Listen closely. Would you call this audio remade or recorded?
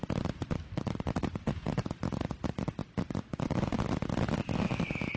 recorded